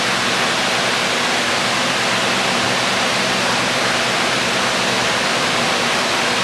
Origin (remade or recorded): recorded